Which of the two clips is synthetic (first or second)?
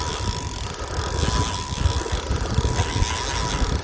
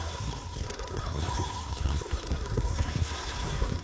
second